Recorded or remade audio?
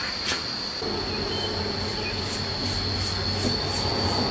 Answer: recorded